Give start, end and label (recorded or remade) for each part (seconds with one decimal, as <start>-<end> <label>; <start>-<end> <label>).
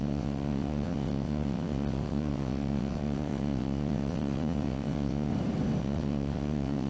0.0-5.3 remade; 5.3-5.8 recorded; 5.8-6.9 remade